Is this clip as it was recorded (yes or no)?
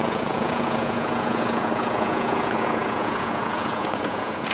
no